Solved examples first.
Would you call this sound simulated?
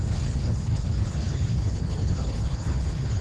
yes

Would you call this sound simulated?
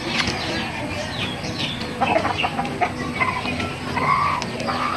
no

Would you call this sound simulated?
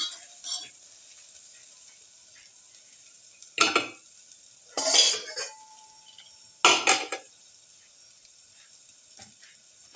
no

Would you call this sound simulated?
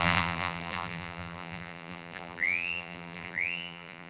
yes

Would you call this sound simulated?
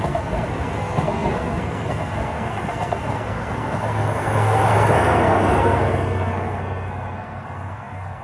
yes